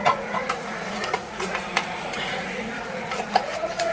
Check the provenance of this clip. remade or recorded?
remade